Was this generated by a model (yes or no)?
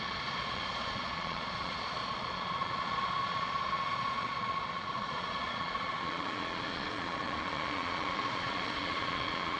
yes